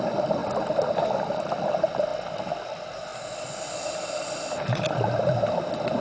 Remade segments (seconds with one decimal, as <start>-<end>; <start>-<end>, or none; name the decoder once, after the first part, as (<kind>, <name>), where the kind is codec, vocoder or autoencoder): 3.1-4.8 (vocoder, BigVGAN v2)